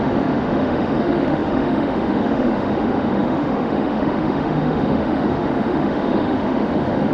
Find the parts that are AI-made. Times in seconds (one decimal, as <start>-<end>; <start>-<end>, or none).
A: 0.0-7.1